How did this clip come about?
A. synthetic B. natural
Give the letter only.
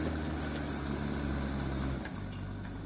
B